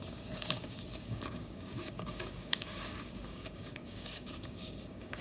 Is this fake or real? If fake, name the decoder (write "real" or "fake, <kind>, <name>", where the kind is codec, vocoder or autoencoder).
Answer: fake, codec, DAC